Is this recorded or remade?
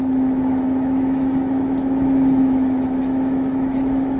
remade